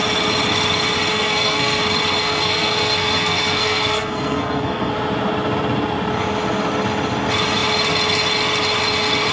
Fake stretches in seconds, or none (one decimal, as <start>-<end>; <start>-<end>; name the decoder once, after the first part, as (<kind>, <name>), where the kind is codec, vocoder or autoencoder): 1.1-1.8 (codec, SNAC); 2.2-4.9

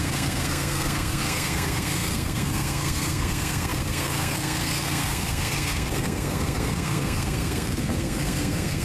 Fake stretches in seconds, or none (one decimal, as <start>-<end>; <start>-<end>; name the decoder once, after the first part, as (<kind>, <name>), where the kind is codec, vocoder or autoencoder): 0.0-8.8 (codec, SNAC)

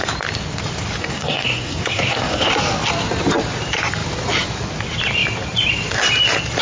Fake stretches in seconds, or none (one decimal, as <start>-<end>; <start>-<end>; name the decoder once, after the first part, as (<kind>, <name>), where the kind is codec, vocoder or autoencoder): 1.0-2.5 (codec, SNAC)

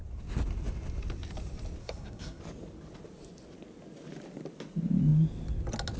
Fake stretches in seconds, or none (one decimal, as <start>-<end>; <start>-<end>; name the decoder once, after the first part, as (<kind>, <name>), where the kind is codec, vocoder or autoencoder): 1.8-2.4 (codec, SNAC)

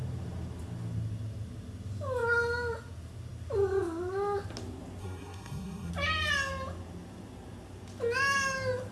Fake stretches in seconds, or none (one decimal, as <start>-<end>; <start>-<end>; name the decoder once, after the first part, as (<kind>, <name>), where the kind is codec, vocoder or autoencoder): 5.0-5.9 (codec, SNAC)

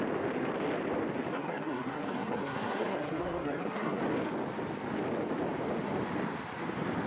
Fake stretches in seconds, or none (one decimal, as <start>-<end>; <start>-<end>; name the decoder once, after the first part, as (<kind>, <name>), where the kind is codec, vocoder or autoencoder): 1.3-4.0 (codec, SNAC)

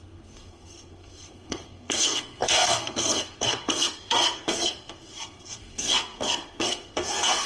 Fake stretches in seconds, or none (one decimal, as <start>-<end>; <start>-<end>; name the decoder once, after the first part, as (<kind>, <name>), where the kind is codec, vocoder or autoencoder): 0.0-7.5 (codec, SNAC)

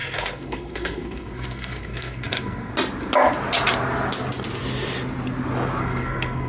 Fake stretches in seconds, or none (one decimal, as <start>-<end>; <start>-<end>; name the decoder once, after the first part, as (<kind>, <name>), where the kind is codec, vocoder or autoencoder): 0.0-2.7 (codec, SNAC); 5.8-6.5